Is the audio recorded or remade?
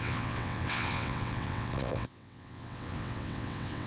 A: remade